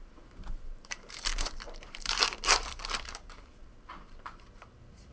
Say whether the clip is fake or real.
fake